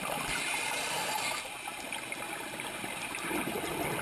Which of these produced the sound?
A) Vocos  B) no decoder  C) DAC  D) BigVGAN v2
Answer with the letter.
B